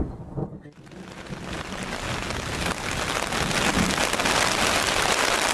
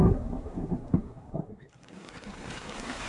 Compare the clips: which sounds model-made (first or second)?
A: second